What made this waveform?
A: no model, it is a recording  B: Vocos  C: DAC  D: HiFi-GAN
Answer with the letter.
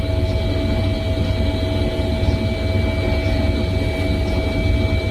A